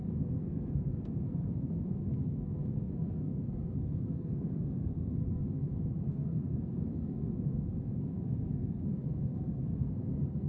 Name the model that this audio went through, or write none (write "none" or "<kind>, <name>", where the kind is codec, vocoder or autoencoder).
codec, SNAC